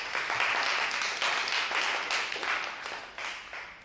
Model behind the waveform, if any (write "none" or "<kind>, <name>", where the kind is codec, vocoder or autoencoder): none